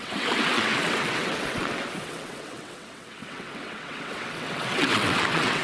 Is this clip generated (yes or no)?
yes